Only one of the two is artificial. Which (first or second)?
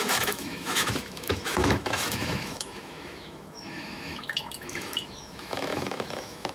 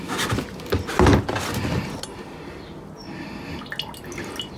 first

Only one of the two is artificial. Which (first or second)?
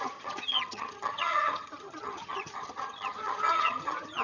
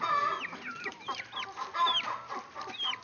first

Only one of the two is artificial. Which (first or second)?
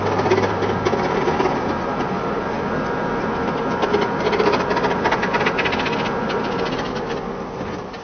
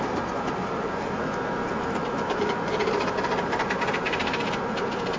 second